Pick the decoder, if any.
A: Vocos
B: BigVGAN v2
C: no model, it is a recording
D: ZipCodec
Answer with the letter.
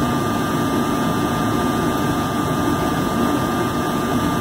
A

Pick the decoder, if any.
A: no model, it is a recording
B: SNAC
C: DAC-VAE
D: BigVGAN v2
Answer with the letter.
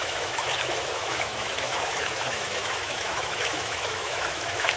C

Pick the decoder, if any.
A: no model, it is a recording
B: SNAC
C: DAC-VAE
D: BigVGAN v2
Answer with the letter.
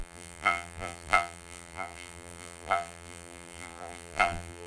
D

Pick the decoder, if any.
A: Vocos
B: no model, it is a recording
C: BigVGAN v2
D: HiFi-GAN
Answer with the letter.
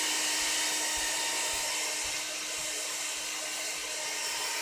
B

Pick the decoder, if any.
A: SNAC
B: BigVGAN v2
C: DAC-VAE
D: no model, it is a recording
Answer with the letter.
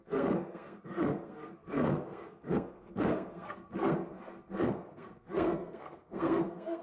A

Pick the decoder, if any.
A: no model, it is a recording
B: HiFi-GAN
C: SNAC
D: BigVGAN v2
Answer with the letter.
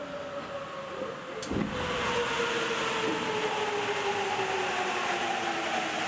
A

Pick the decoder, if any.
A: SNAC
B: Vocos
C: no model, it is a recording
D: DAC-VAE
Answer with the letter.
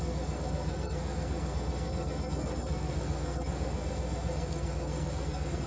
A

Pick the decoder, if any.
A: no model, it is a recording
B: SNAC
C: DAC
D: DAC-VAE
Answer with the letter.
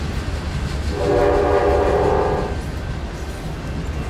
A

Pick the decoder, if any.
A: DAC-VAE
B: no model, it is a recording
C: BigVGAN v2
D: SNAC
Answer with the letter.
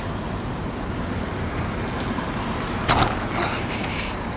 C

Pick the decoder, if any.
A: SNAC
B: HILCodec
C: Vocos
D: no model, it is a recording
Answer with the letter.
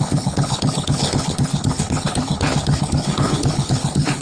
B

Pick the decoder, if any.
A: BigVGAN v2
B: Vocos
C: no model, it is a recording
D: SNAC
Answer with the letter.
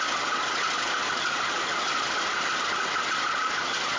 C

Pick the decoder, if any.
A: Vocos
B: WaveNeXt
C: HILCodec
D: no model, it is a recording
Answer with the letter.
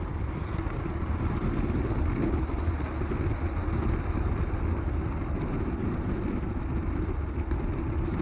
D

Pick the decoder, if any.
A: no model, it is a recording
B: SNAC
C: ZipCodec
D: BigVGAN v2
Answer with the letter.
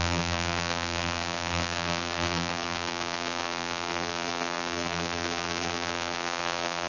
D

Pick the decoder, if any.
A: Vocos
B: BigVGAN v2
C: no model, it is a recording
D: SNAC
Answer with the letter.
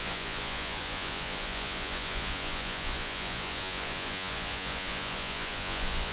A